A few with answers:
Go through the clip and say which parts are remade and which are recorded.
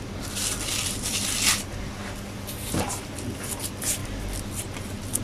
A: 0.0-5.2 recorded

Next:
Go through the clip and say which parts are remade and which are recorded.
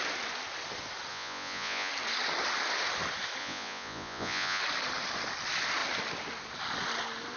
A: 0.0-1.1 recorded; 1.1-1.9 remade; 1.9-3.4 recorded; 3.4-4.6 remade; 4.6-7.4 recorded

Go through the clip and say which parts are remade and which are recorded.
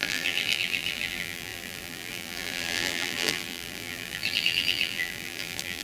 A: 0.0-5.8 remade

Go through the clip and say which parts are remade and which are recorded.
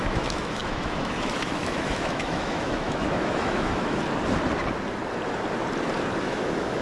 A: 0.0-4.0 remade; 4.0-6.2 recorded; 6.2-6.8 remade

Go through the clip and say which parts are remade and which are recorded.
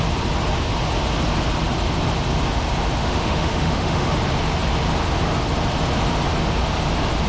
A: 0.0-3.0 recorded; 3.0-4.1 remade; 4.1-7.3 recorded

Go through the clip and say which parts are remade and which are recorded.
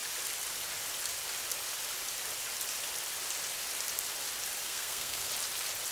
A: 0.0-4.6 recorded; 4.6-5.3 remade; 5.3-5.9 recorded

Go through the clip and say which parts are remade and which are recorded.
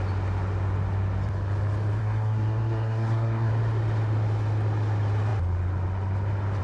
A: 0.0-2.0 recorded; 2.0-3.5 remade; 3.5-6.6 recorded